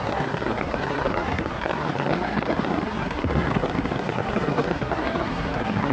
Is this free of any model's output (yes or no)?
no